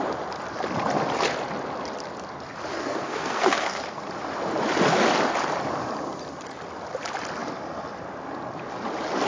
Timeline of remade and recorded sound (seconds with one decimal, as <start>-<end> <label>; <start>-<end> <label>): 0.0-2.7 recorded; 2.7-4.0 remade; 4.0-9.3 recorded

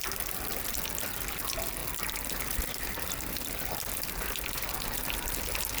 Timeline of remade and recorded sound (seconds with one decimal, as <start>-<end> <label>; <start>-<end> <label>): 0.0-1.8 recorded; 1.8-4.7 remade; 4.7-5.8 recorded

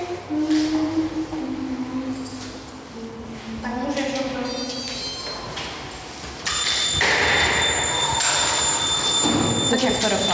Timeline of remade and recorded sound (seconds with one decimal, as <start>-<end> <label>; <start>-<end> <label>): 0.0-10.3 recorded

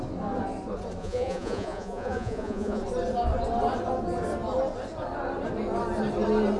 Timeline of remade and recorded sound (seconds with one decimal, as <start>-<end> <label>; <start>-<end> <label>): 0.0-1.0 recorded; 1.0-2.8 remade; 2.8-6.6 recorded